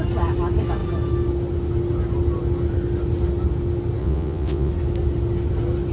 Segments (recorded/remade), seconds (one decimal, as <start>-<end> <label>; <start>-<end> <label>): 0.0-4.0 recorded; 4.0-4.7 remade; 4.7-5.9 recorded